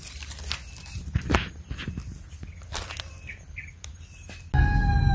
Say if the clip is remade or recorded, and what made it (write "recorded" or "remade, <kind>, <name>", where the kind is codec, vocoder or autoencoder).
recorded